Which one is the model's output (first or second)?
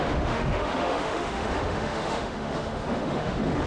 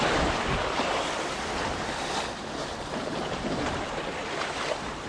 first